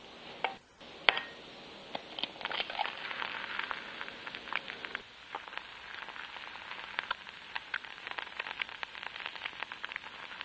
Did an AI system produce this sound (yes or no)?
no